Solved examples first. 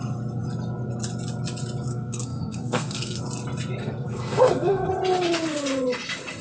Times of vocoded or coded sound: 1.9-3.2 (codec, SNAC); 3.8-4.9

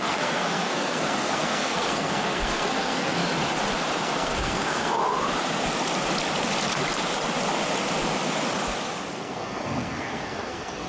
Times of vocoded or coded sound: 0.0-3.2 (codec, SNAC); 4.0-5.0; 9.1-10.9